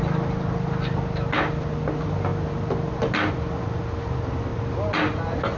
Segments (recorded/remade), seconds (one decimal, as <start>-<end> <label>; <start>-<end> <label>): 0.0-5.6 recorded